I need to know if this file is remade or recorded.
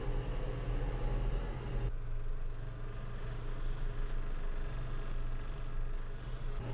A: recorded